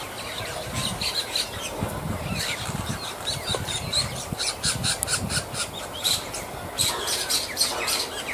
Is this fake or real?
real